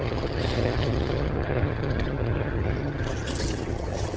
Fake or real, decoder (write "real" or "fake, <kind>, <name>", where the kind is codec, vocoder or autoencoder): fake, vocoder, HiFi-GAN